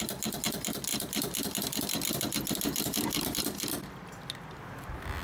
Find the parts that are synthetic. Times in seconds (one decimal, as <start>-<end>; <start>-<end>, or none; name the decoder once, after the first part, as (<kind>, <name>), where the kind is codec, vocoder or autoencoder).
0.9-4.0 (vocoder, BigVGAN v2)